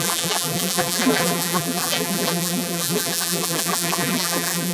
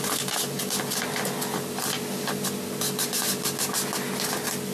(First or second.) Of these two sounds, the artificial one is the first